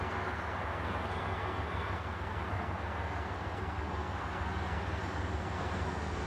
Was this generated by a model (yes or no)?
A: yes